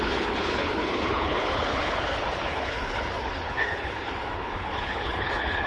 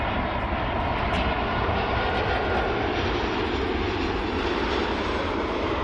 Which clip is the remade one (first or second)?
first